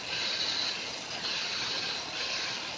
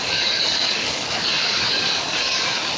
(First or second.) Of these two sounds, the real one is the first